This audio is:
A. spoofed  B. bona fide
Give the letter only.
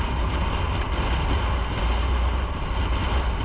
B